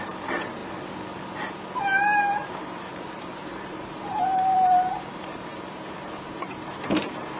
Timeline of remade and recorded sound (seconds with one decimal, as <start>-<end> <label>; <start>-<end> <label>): 0.0-0.6 remade; 0.6-2.2 recorded; 2.2-7.4 remade